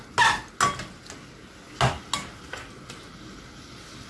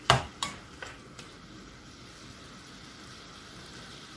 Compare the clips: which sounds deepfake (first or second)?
second